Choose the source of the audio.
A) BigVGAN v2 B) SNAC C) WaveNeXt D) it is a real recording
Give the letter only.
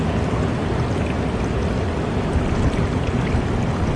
D